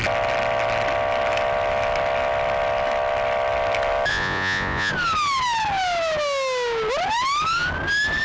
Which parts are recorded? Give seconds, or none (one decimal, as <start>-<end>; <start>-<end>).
0.0-4.1; 4.9-8.2

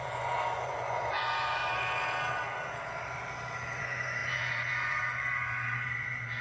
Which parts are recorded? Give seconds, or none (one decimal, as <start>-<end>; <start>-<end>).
1.6-3.8

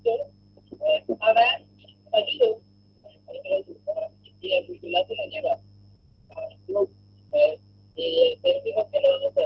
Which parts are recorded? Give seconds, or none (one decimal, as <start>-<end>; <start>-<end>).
0.0-9.5